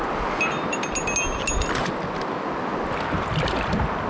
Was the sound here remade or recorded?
recorded